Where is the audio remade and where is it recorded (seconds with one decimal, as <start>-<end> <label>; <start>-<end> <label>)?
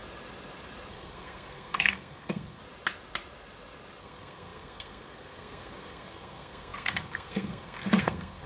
0.0-0.9 recorded; 0.9-2.6 remade; 2.6-4.0 recorded; 4.0-8.5 remade